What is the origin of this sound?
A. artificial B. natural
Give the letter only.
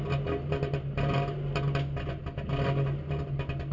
B